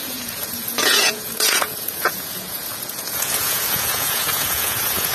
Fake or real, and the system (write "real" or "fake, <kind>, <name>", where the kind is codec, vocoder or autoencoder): fake, vocoder, Vocos